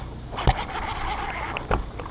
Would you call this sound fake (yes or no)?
no